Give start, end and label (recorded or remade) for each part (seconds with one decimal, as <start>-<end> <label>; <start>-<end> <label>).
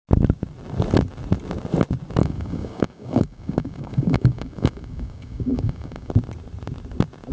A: 0.0-2.2 recorded; 2.2-6.1 remade; 6.1-7.3 recorded